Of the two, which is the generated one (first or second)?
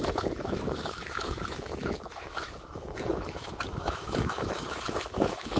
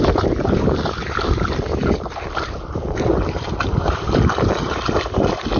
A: first